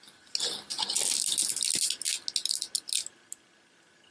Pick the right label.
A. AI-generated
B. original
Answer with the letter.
B